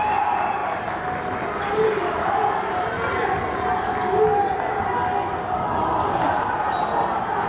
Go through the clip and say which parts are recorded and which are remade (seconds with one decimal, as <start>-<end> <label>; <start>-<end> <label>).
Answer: 0.0-7.5 recorded